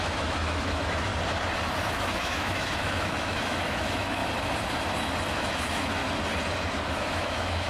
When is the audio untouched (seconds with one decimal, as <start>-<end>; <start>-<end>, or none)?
1.1-1.9; 4.2-5.3; 6.0-6.9